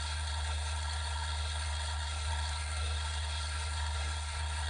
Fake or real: fake